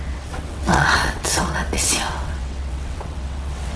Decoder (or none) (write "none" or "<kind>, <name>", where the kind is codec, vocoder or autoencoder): vocoder, WaveNeXt